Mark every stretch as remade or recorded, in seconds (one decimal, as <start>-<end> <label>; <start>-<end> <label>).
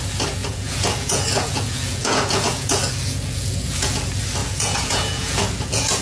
0.0-0.4 recorded; 0.4-4.0 remade; 4.0-4.4 recorded; 4.4-6.0 remade